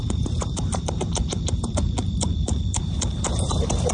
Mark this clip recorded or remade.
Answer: remade